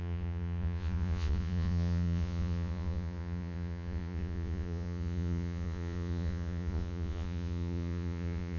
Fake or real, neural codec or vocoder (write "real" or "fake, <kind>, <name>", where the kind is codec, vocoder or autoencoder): fake, vocoder, Vocos